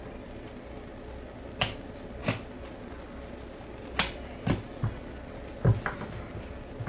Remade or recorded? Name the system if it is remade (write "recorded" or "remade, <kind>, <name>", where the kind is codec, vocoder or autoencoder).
recorded